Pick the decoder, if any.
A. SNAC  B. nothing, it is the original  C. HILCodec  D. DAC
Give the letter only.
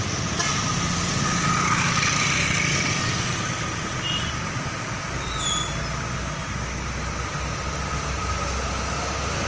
B